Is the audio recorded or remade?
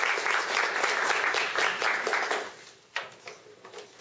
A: recorded